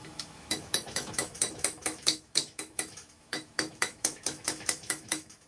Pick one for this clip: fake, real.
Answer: fake